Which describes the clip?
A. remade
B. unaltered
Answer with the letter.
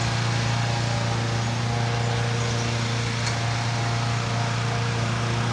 B